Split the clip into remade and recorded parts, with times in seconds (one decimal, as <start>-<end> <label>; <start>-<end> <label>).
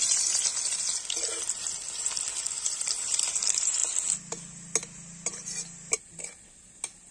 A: 0.0-0.5 remade; 0.5-2.4 recorded; 2.4-3.8 remade; 3.8-7.1 recorded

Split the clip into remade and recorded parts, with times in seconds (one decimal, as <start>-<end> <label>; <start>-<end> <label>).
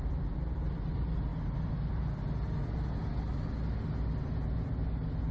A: 0.0-5.3 recorded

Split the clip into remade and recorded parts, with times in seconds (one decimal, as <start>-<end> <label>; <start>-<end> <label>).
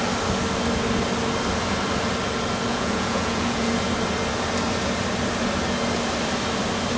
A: 0.0-2.7 recorded; 2.7-3.7 remade; 3.7-7.0 recorded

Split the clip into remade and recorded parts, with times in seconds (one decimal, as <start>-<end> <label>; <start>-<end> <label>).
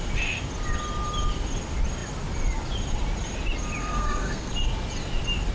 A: 0.0-3.8 recorded; 3.8-4.5 remade; 4.5-5.5 recorded